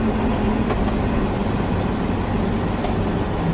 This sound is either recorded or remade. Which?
recorded